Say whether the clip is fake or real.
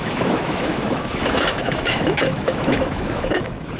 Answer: fake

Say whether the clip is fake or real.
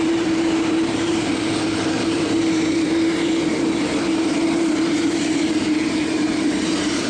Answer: fake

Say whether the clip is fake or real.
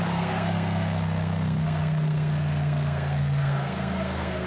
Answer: fake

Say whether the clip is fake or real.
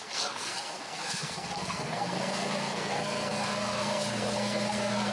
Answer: fake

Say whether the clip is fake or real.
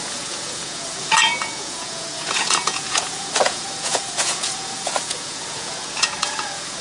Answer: fake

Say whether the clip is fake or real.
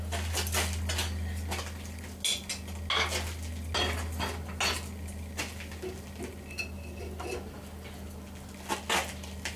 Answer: real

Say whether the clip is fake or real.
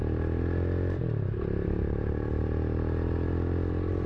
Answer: real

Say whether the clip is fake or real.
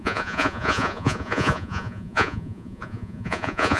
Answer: fake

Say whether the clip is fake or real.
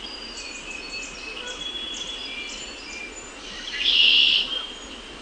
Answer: real